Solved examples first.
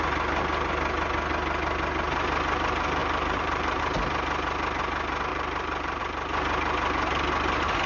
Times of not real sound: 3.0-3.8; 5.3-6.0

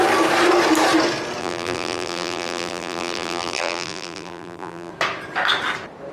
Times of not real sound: 1.4-4.9